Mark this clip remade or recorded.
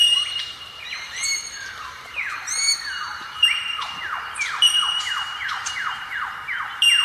remade